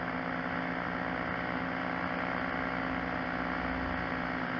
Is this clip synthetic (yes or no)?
no